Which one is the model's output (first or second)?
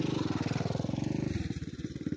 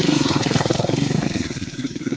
second